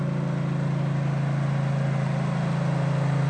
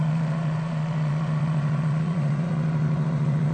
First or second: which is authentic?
first